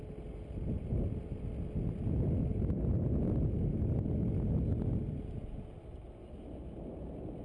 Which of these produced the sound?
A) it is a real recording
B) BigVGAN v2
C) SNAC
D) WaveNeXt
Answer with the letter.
A